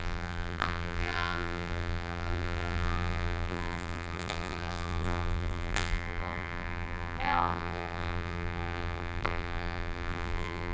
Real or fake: fake